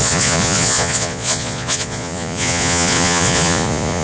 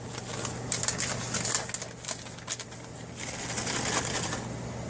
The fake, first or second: first